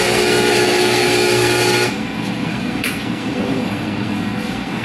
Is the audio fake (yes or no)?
yes